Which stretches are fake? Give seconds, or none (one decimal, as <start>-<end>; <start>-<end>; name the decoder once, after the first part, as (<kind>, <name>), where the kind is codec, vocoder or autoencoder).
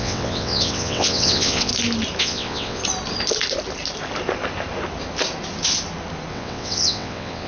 0.0-1.7 (vocoder, WaveNeXt); 2.2-2.8; 6.3-7.5